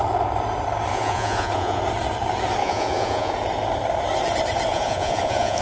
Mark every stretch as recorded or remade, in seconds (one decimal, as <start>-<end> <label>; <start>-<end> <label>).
0.0-0.9 recorded; 0.9-1.8 remade; 1.8-2.6 recorded; 2.6-3.3 remade; 3.3-4.7 recorded; 4.7-5.6 remade

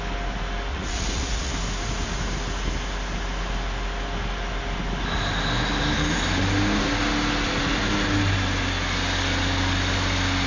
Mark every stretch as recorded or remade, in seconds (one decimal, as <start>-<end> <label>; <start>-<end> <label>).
0.0-0.7 recorded; 0.7-1.5 remade; 1.5-10.5 recorded

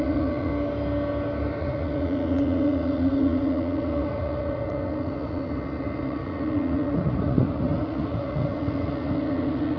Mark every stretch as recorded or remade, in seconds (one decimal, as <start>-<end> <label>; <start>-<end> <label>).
0.0-0.5 remade; 0.5-1.6 recorded; 1.6-9.8 remade

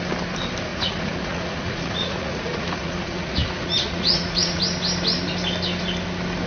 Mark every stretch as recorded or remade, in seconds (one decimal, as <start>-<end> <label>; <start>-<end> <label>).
0.0-0.7 recorded; 0.7-4.6 remade; 4.6-6.5 recorded

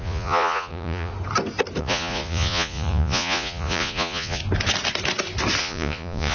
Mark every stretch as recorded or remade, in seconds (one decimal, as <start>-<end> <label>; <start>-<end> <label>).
0.0-1.1 remade; 1.1-1.8 recorded; 1.8-4.4 remade; 4.4-5.6 recorded; 5.6-6.3 remade

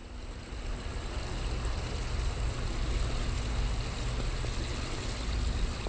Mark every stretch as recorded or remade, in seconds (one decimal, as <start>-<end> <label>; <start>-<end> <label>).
0.0-5.9 recorded

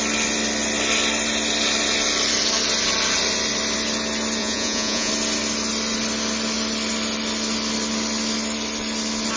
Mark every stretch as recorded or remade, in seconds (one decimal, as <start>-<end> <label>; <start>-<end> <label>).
0.0-4.4 recorded; 4.4-5.1 remade; 5.1-9.4 recorded

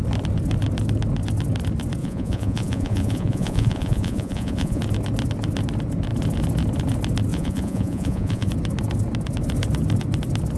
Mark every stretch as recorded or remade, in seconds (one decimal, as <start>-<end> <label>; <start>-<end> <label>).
0.0-2.0 recorded; 2.0-4.8 remade; 4.8-7.3 recorded; 7.3-8.5 remade; 8.5-10.6 recorded